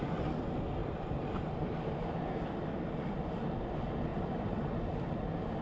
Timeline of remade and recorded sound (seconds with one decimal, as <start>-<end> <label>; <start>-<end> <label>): 0.0-0.8 recorded; 0.8-2.4 remade; 2.4-4.1 recorded; 4.1-4.9 remade; 4.9-5.6 recorded